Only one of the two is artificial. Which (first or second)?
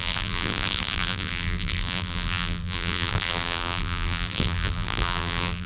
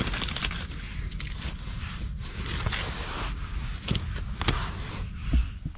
first